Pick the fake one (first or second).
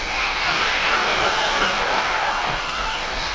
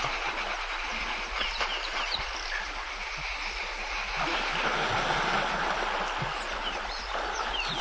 first